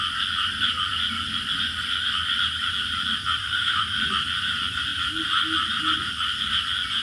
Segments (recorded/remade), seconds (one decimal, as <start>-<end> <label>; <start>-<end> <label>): 0.0-3.4 recorded; 3.4-4.0 remade; 4.0-7.0 recorded